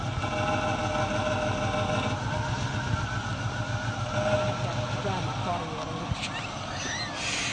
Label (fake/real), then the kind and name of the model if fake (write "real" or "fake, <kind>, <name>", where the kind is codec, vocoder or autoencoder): real